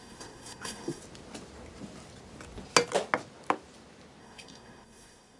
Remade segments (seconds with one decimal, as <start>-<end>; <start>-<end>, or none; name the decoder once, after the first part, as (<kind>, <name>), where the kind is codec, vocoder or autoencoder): 0.0-1.0 (codec, SNAC); 4.2-5.4